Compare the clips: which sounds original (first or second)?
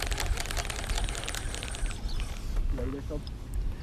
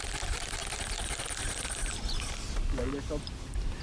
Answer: first